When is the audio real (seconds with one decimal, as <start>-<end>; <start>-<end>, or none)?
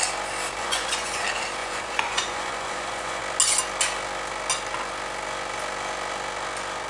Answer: 0.0-0.6; 1.2-1.6; 3.2-6.9